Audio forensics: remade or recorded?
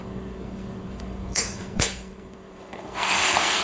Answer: remade